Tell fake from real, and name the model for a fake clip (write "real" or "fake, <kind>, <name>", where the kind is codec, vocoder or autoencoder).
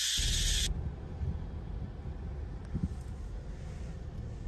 real